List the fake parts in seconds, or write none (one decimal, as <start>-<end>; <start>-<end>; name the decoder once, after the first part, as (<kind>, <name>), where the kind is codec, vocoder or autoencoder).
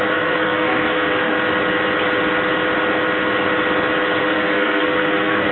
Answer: 0.0-1.3 (codec, SNAC); 4.2-5.5